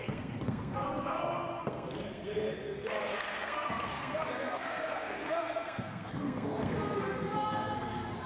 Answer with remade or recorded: remade